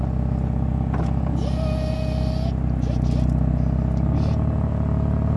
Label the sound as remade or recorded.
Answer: recorded